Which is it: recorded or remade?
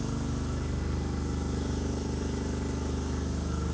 remade